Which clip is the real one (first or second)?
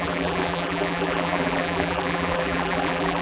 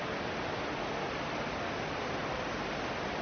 second